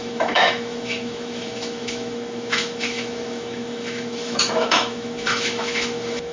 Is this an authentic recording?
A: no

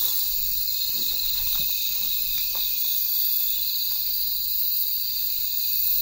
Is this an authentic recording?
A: yes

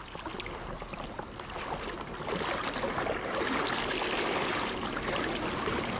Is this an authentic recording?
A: yes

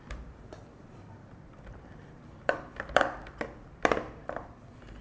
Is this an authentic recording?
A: no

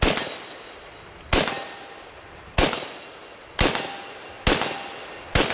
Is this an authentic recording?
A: yes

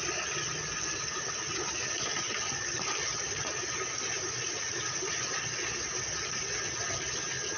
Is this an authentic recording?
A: yes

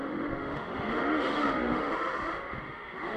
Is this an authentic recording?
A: no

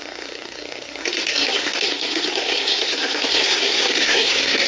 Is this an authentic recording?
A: no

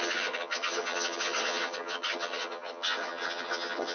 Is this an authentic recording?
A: no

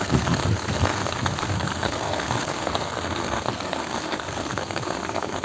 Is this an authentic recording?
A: no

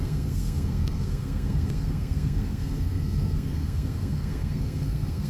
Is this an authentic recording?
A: no